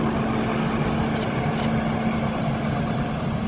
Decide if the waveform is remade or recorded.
recorded